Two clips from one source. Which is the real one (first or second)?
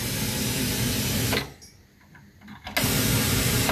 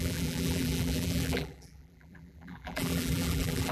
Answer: first